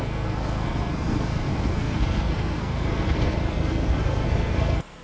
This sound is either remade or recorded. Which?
remade